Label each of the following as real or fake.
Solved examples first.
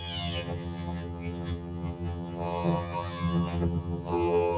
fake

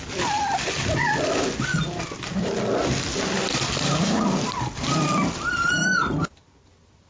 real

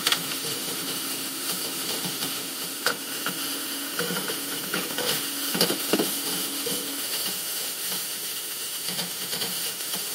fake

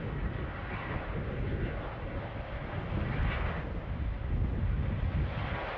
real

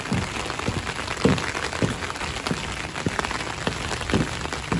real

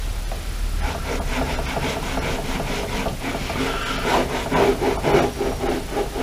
real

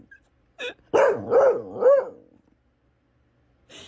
real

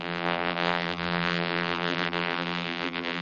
fake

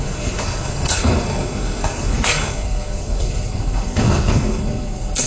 fake